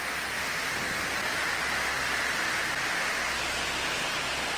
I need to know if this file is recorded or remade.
recorded